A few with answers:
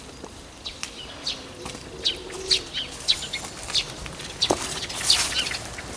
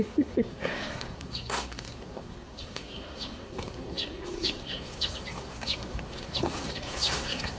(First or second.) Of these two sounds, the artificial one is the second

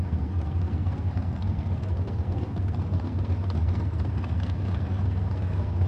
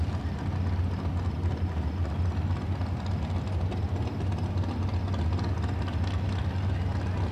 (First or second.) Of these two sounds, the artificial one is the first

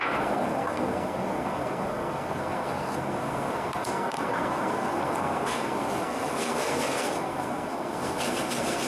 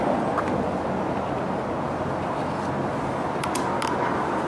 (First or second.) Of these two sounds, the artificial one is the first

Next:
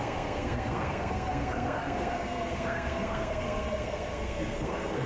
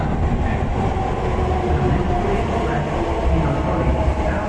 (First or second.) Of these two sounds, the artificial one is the first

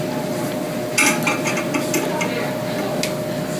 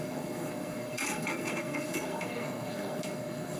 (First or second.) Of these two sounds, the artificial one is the second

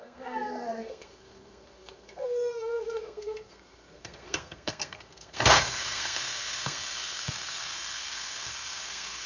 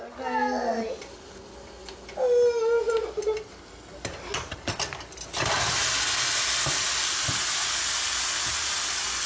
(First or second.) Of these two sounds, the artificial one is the first